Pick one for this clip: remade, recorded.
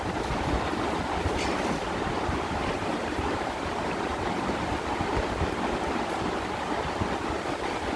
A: recorded